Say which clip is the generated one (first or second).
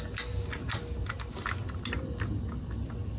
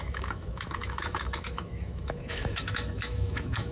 second